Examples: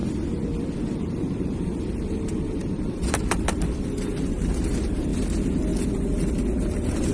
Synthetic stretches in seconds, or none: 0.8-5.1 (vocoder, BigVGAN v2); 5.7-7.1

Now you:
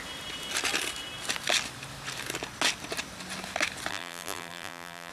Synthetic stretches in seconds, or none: 3.9-5.1 (vocoder, BigVGAN v2)

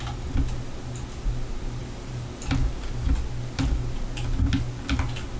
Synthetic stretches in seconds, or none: 1.8-3.1 (vocoder, BigVGAN v2)

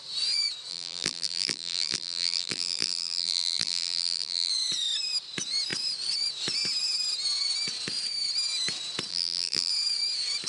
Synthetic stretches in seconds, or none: 0.7-4.5 (vocoder, BigVGAN v2); 9.1-9.7

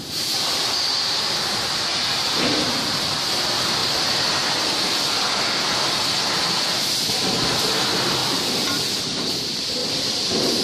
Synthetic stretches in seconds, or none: 0.0-3.8 (vocoder, BigVGAN v2); 6.8-8.2; 8.9-9.8

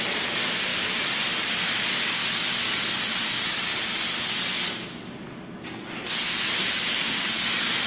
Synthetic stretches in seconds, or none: none